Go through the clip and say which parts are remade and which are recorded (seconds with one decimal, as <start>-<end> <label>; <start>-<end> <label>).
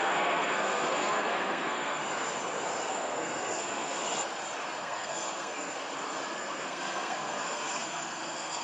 0.0-2.0 remade; 2.0-2.9 recorded; 2.9-4.0 remade; 4.0-4.8 recorded; 4.8-5.8 remade; 5.8-6.4 recorded; 6.4-8.6 remade